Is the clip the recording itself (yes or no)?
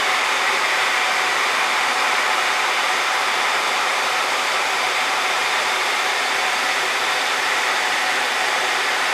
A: no